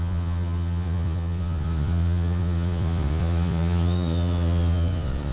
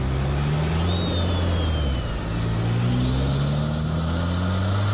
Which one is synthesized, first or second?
first